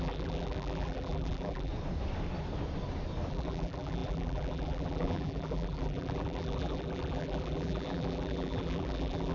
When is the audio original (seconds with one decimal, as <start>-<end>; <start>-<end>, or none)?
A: 1.7-3.3

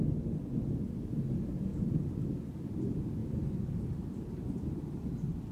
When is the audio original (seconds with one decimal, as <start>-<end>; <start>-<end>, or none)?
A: 0.0-5.5

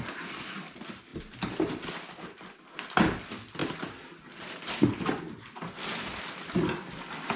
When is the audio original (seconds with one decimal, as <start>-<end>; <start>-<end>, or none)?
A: 0.0-3.6; 5.2-7.4

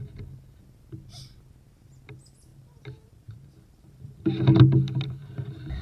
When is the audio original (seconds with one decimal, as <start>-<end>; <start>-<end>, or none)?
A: 0.0-2.5; 4.3-5.2

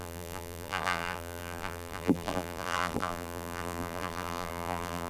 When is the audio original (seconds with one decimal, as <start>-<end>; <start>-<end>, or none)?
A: none

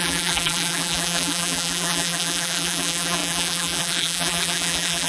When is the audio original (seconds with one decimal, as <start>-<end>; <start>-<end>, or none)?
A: none

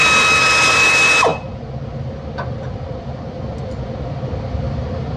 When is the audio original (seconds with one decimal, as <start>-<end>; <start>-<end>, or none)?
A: 0.0-0.7

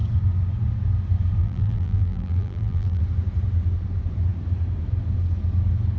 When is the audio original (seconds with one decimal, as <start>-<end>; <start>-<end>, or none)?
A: 0.0-1.4; 3.0-6.0